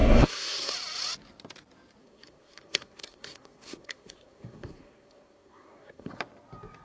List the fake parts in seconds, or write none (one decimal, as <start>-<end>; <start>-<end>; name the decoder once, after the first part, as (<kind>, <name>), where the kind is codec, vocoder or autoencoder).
0.0-0.7 (codec, SNAC); 2.0-6.1